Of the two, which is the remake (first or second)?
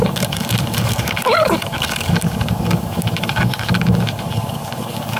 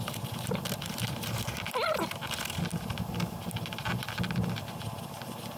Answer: first